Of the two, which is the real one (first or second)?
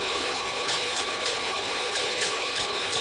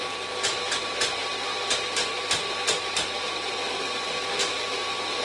second